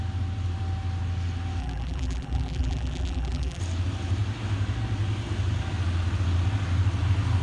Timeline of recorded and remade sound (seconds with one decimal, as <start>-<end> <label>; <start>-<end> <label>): 0.0-1.6 recorded; 1.6-3.6 remade; 3.6-7.4 recorded